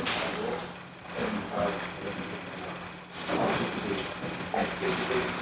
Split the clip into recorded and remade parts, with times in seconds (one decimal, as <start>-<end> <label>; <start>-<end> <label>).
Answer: 0.0-5.4 recorded